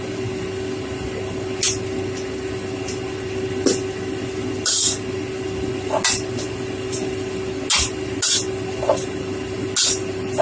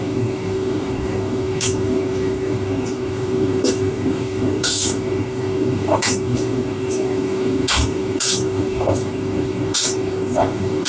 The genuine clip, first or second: first